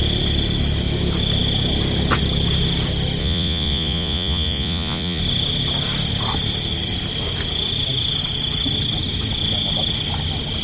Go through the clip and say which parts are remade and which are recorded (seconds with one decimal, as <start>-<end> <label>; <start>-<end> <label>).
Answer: 0.0-3.2 recorded; 3.2-5.2 remade; 5.2-10.6 recorded